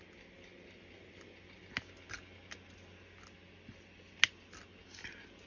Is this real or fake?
real